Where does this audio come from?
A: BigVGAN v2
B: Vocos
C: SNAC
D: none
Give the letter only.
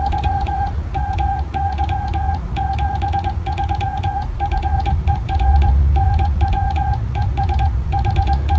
B